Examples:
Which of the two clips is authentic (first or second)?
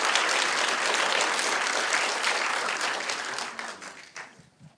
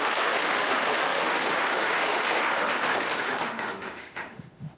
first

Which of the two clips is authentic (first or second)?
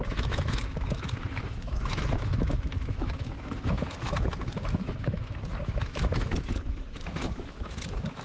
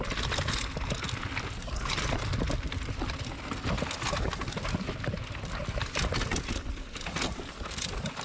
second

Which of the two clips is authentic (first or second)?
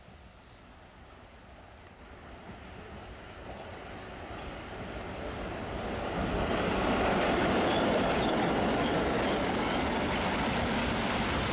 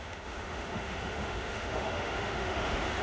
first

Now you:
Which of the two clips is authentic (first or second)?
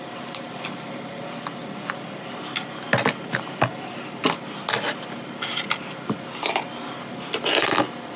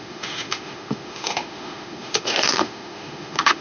first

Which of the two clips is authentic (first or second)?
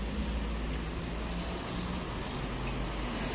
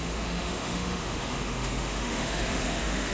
first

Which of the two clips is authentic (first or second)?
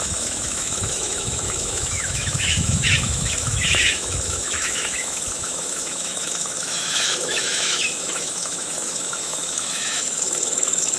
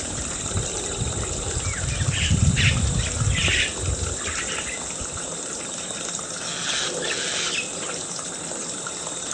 second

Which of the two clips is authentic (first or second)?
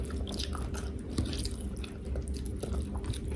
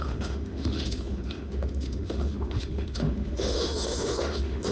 first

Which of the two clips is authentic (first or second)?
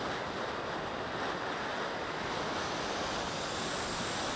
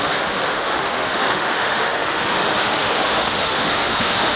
first